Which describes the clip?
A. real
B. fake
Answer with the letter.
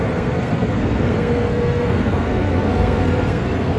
B